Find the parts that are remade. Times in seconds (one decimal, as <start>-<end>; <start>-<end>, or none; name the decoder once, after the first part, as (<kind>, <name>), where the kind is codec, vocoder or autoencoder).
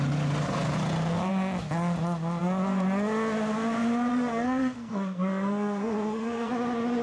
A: 4.1-6.5 (codec, SNAC)